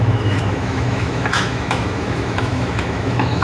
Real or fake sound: fake